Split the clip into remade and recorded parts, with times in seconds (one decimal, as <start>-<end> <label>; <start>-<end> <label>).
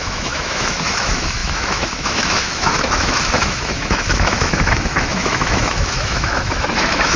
0.0-7.2 remade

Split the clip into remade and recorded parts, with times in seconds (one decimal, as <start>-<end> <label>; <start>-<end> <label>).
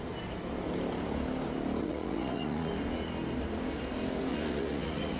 0.0-1.8 recorded; 1.8-2.7 remade; 2.7-4.3 recorded; 4.3-5.2 remade